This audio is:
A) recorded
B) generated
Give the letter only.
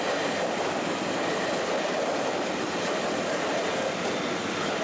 A